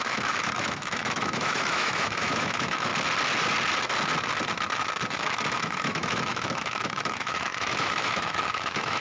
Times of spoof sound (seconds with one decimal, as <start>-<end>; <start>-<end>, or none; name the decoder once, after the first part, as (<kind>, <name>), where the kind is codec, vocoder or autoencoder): 0.0-2.9 (autoencoder, DAC-VAE); 5.1-9.0